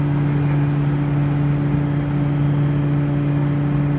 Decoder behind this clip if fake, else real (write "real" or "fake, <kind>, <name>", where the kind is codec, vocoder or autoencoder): real